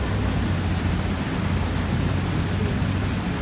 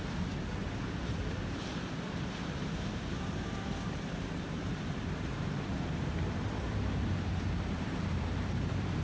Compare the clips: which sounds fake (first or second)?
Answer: second